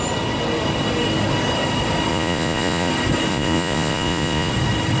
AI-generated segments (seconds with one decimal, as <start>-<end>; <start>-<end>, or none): 2.1-2.9; 3.3-4.5

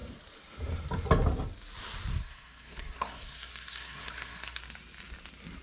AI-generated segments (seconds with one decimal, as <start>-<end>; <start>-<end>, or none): 2.1-4.6

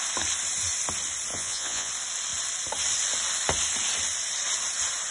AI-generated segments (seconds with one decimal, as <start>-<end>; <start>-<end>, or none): 1.3-1.9

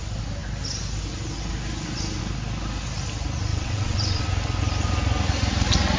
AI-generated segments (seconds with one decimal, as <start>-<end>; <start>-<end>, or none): 3.5-4.2

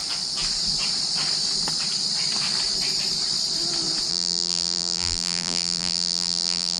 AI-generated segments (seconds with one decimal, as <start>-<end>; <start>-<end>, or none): 4.1-6.8

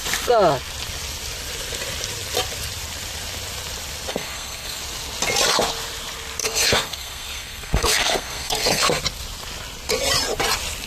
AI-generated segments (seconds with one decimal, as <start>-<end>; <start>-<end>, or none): 4.1-4.8; 6.4-9.0

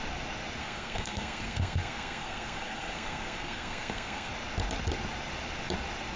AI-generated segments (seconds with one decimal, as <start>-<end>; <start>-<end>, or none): 0.6-4.3

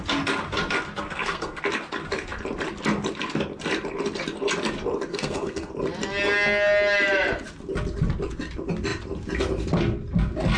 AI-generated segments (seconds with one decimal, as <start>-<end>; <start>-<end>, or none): 1.1-1.6; 5.1-5.7